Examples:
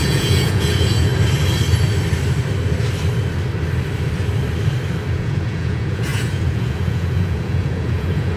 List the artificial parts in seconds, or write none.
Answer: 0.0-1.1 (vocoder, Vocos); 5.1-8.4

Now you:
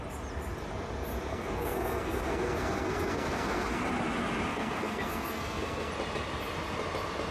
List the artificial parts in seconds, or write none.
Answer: 1.3-3.8 (codec, SNAC); 4.5-5.9

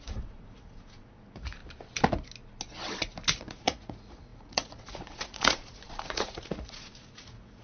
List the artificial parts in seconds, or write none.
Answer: 0.0-1.6 (vocoder, Vocos); 3.4-7.6